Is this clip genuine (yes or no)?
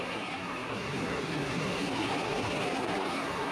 no